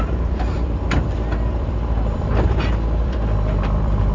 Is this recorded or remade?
remade